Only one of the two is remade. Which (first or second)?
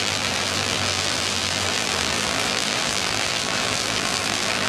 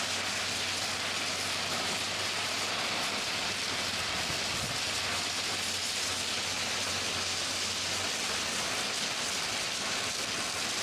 first